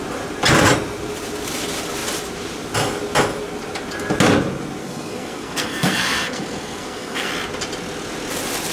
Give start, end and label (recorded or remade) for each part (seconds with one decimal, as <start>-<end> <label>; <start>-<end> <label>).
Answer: 0.0-4.8 recorded; 4.8-7.3 remade; 7.3-8.7 recorded

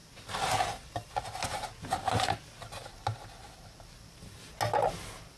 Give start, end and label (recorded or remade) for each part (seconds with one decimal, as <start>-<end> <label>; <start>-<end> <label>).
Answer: 0.0-5.4 recorded